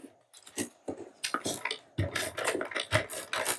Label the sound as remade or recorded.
recorded